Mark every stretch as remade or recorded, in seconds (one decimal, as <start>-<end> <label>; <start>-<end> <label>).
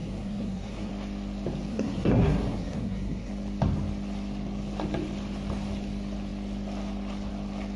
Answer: 0.0-0.9 remade; 0.9-1.7 recorded; 1.7-3.3 remade; 3.3-7.8 recorded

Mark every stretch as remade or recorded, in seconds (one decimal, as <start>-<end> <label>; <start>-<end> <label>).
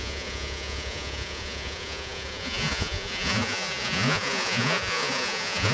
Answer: 0.0-5.7 remade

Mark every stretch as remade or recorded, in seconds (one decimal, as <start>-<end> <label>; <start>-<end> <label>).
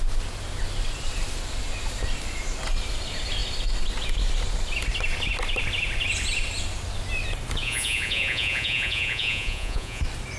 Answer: 0.0-7.6 recorded; 7.6-10.0 remade; 10.0-10.4 recorded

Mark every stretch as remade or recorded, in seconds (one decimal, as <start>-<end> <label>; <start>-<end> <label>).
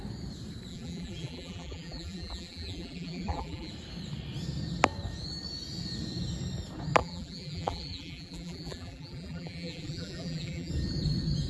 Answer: 0.0-0.7 recorded; 0.7-3.7 remade; 3.7-7.0 recorded; 7.0-10.7 remade; 10.7-11.5 recorded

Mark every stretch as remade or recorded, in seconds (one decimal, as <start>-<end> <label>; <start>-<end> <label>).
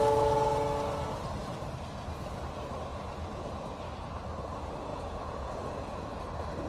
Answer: 0.0-2.9 recorded; 2.9-3.5 remade; 3.5-4.9 recorded; 4.9-6.2 remade; 6.2-6.7 recorded